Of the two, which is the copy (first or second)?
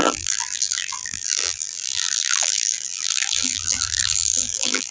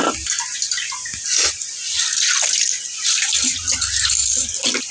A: first